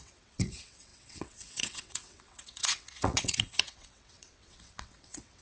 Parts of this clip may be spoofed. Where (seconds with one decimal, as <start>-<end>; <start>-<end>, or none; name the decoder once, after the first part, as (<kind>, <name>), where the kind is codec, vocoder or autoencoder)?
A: 0.0-5.4 (vocoder, WaveNeXt)